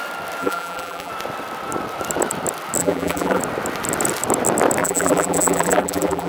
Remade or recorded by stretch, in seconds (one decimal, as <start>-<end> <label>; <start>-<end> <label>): 0.0-0.4 recorded; 0.4-1.1 remade; 1.1-2.8 recorded; 2.8-3.4 remade; 3.4-4.8 recorded; 4.8-6.3 remade